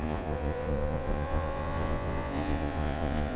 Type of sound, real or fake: fake